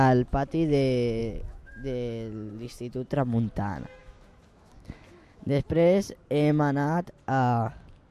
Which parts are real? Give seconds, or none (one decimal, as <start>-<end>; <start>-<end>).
0.0-1.2; 2.5-4.0; 5.6-8.1